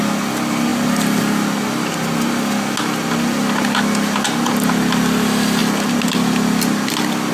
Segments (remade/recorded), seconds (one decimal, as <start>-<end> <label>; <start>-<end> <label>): 0.0-7.3 recorded